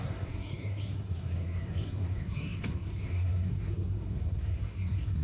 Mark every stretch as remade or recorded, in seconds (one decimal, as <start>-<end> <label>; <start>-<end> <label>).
0.0-5.2 remade